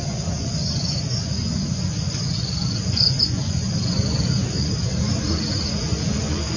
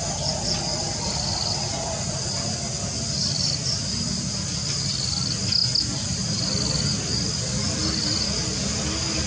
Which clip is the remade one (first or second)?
first